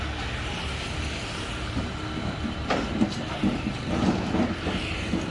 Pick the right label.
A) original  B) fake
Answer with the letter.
A